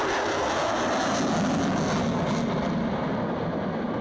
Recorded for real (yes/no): yes